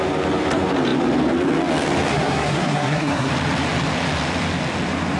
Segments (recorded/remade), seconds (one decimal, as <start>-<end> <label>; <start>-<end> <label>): 0.0-2.1 recorded; 2.1-3.3 remade; 3.3-5.2 recorded